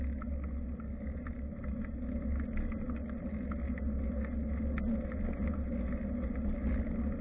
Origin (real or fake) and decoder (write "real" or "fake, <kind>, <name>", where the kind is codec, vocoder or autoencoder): real